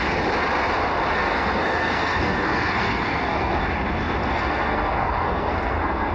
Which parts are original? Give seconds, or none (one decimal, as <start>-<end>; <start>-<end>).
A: 0.0-1.2; 3.6-4.2